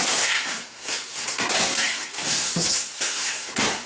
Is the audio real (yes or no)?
no